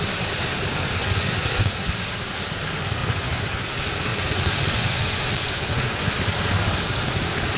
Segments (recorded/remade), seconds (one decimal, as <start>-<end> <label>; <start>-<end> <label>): 0.0-1.0 recorded; 1.0-1.9 remade; 1.9-3.0 recorded; 3.0-3.6 remade; 3.6-4.1 recorded; 4.1-6.1 remade; 6.1-7.6 recorded